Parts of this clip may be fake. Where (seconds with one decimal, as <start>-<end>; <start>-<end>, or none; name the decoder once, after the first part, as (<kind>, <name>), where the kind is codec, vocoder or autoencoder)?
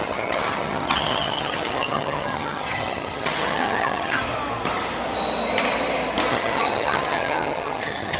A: 0.0-4.2 (vocoder, HiFi-GAN); 6.3-8.2